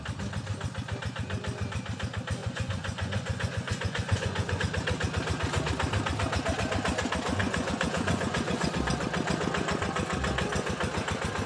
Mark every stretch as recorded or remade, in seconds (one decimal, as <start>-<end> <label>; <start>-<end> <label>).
0.0-2.4 recorded; 2.4-4.6 remade; 4.6-7.4 recorded; 7.4-8.7 remade; 8.7-11.5 recorded

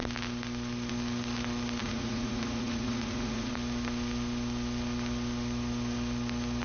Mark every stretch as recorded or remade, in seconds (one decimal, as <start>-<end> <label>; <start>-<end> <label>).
0.0-1.8 recorded; 1.8-3.5 remade; 3.5-6.6 recorded